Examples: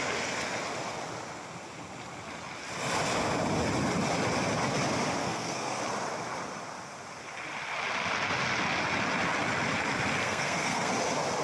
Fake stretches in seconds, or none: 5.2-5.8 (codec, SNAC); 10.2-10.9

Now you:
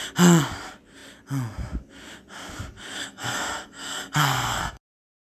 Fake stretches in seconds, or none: 3.0-4.8 (codec, SNAC)